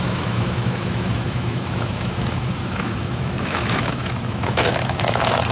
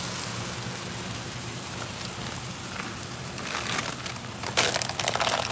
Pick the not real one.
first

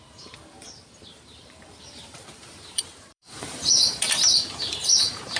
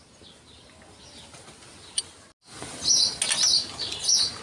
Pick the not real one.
first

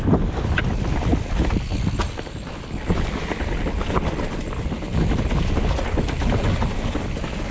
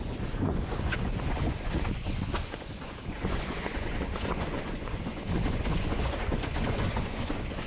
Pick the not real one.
second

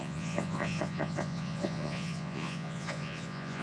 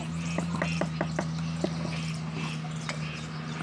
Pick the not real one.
first